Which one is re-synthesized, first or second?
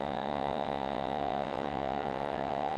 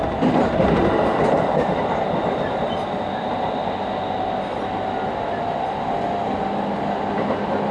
first